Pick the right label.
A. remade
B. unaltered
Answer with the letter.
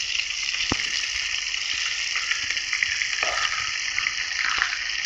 B